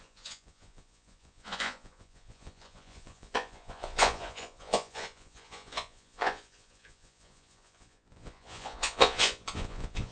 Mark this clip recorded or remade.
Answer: remade